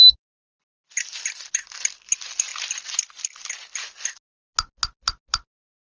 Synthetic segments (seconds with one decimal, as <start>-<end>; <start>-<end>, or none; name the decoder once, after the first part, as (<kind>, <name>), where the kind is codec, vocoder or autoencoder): none